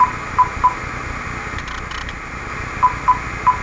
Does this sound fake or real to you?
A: real